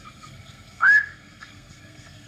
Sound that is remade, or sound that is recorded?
remade